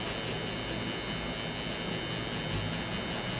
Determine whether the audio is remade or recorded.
recorded